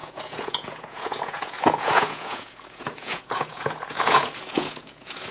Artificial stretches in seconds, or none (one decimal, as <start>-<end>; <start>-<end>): 0.0-5.3

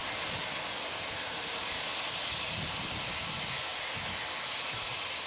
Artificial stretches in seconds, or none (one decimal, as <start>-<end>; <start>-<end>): none

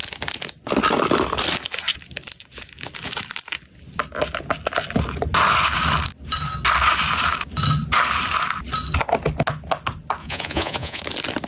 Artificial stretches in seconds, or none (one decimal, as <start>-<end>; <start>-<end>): 10.2-11.0